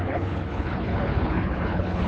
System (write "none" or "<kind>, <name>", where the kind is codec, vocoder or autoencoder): codec, HILCodec